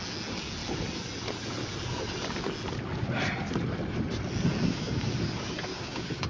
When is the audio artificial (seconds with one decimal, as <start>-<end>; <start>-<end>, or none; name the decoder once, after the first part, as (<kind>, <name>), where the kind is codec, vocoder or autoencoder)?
5.7-6.3 (codec, DAC)